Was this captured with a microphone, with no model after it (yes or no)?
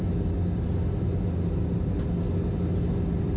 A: yes